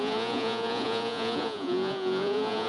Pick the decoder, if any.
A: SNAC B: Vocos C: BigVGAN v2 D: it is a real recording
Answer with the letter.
B